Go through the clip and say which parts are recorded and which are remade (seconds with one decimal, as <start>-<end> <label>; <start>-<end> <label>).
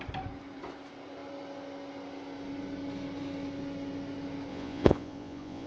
0.0-4.5 recorded; 4.5-5.7 remade